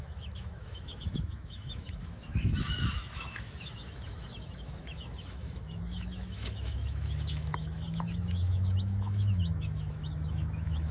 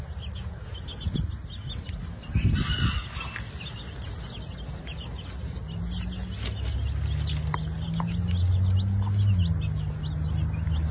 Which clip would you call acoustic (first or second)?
second